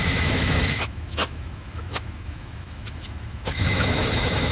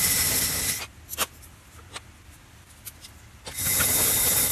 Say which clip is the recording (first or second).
second